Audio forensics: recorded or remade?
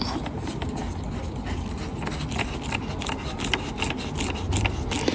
recorded